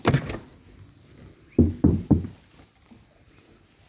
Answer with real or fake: real